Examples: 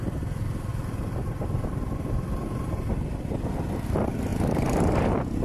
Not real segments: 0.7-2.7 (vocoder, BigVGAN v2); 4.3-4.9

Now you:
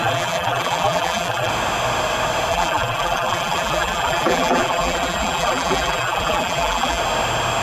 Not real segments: 0.0-1.5 (vocoder, BigVGAN v2); 2.5-7.0

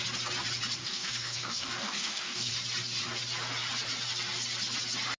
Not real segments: 0.8-2.5 (codec, DAC)